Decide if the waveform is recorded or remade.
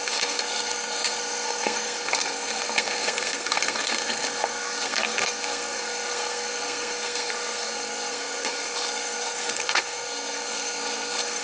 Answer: remade